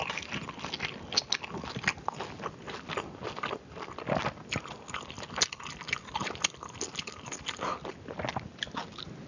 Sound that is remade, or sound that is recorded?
recorded